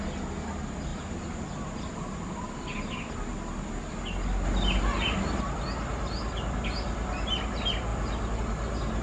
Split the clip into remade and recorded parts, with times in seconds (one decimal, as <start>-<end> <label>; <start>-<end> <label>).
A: 0.0-9.0 recorded